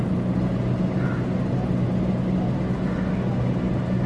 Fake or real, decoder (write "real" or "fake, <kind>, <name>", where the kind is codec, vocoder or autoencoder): real